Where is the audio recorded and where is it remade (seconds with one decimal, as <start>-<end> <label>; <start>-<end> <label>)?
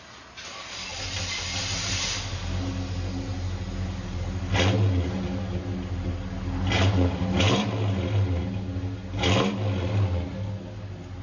0.0-11.2 recorded